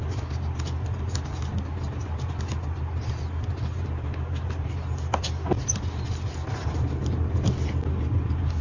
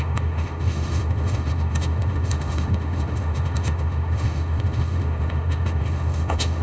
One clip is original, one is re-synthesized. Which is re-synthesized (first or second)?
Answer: second